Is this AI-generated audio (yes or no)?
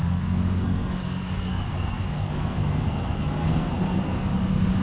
yes